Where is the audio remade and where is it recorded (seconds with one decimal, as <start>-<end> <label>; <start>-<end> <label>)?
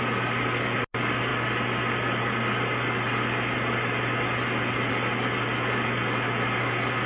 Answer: 0.0-7.1 recorded